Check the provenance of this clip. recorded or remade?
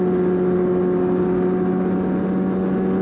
recorded